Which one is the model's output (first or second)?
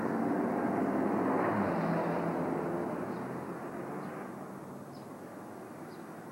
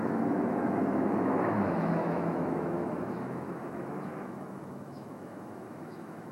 second